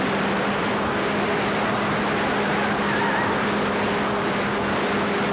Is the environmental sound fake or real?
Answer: real